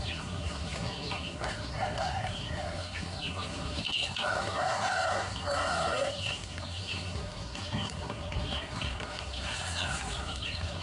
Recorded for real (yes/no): no